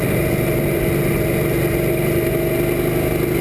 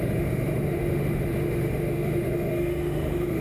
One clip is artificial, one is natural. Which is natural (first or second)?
first